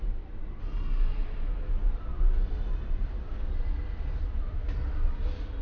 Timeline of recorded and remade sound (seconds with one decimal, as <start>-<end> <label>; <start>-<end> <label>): 0.0-0.6 remade; 0.6-5.6 recorded